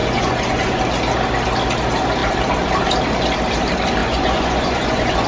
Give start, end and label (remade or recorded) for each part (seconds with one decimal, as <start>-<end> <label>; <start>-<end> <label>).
0.0-0.8 remade; 0.8-4.0 recorded; 4.0-5.3 remade